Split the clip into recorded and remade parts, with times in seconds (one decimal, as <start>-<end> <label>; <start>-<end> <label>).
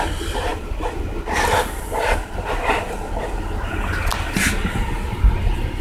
0.0-5.8 recorded